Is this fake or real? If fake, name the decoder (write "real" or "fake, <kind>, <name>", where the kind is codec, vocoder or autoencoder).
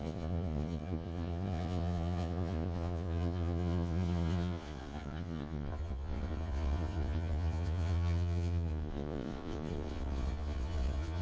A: fake, vocoder, Vocos